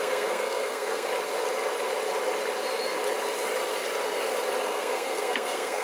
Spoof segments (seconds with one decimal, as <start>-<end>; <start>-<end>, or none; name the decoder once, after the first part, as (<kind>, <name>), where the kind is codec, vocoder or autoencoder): 0.0-1.1 (codec, SNAC); 4.6-5.8